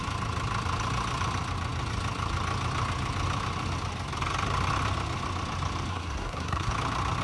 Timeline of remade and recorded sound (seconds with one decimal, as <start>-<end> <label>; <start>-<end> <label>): 0.0-5.9 recorded; 5.9-6.7 remade; 6.7-7.2 recorded